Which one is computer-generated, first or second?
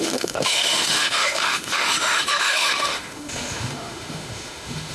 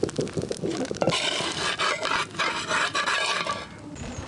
first